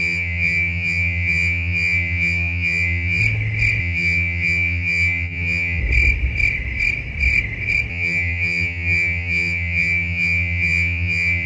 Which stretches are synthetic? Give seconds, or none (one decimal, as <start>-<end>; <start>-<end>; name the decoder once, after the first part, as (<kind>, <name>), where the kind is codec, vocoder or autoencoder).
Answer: 0.0-3.2 (vocoder, HiFi-GAN); 3.8-5.8; 7.9-11.5